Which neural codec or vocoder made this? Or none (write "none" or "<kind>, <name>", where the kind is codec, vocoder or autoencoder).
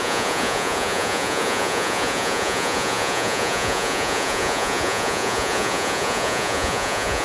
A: vocoder, Vocos